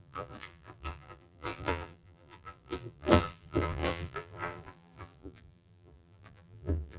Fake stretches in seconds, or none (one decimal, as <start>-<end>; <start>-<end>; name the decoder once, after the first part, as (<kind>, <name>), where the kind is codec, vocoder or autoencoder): 0.0-7.0 (vocoder, BigVGAN v2)